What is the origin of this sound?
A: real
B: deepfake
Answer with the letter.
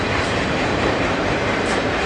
B